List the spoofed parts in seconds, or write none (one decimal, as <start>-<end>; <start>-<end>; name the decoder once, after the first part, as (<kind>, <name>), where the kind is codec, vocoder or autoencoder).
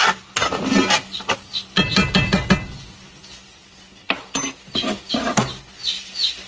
none